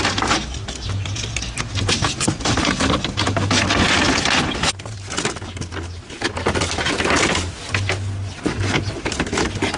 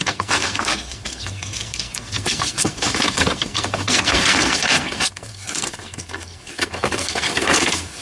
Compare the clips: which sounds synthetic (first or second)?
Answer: second